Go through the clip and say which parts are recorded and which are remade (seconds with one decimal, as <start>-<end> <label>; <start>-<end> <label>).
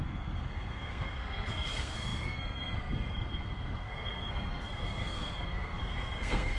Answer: 0.0-6.6 remade